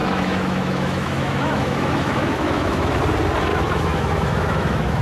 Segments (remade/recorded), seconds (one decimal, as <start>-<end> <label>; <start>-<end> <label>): 0.0-3.0 remade; 3.0-3.5 recorded; 3.5-5.0 remade